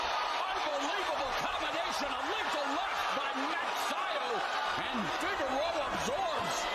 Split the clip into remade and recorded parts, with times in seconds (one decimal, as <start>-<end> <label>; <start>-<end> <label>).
0.0-0.7 recorded; 0.7-1.9 remade; 1.9-3.0 recorded; 3.0-4.3 remade; 4.3-6.7 recorded